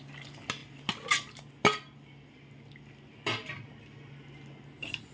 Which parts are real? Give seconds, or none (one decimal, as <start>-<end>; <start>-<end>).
0.0-5.1